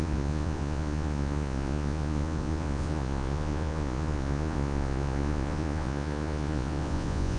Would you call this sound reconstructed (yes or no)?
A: yes